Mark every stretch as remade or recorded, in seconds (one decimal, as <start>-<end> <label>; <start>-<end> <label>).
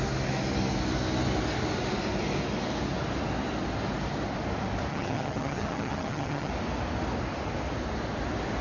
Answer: 0.0-4.9 recorded; 4.9-6.5 remade; 6.5-8.6 recorded